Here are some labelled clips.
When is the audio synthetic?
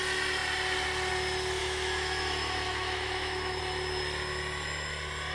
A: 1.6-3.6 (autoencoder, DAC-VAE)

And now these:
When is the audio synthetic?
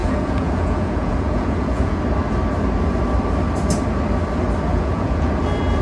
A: 0.0-2.0 (vocoder, Vocos); 4.7-5.3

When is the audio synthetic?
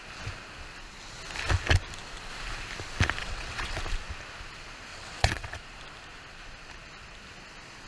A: 3.2-3.8 (vocoder, WaveNeXt); 4.9-5.6